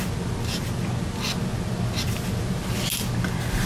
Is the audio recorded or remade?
recorded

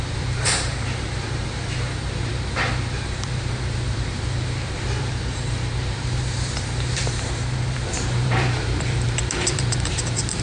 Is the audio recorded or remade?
remade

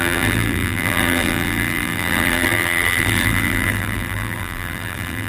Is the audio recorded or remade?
remade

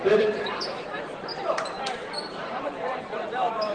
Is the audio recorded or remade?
remade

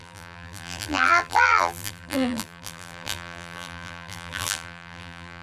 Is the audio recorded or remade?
remade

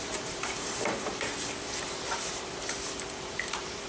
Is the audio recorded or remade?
remade